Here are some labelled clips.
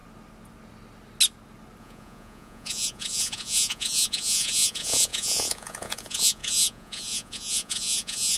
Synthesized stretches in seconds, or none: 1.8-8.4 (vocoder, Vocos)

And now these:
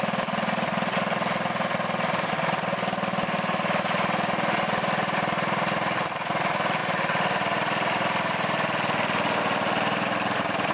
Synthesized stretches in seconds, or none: none

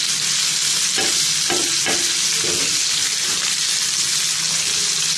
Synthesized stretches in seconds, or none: none